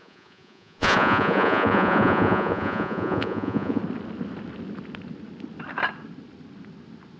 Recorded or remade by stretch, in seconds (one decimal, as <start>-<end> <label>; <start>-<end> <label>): 0.0-3.8 remade; 3.8-7.2 recorded